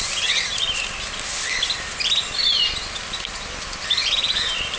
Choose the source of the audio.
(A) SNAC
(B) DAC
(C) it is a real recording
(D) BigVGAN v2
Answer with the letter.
C